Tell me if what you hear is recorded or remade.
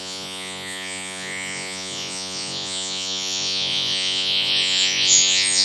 remade